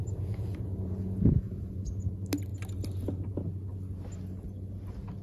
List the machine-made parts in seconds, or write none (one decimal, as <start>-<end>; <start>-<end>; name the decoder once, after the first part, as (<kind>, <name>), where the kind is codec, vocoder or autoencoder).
0.0-2.1 (vocoder, Vocos)